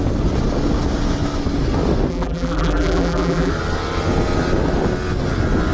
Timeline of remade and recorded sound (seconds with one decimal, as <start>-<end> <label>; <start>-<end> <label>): 0.0-2.1 recorded; 2.1-3.5 remade; 3.5-5.7 recorded